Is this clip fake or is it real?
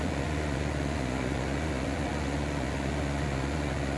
fake